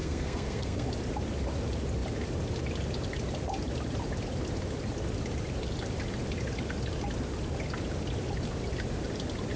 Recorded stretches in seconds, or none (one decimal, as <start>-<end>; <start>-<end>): 0.9-9.6